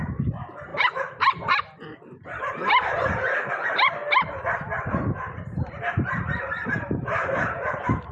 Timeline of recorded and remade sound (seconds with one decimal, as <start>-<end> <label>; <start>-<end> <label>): 0.0-4.0 remade; 4.0-5.2 recorded; 5.2-8.1 remade